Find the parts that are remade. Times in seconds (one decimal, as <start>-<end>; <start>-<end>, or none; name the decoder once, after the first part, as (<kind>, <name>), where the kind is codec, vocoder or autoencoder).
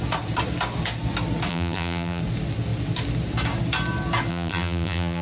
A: 1.5-2.2 (vocoder, BigVGAN v2); 4.3-5.2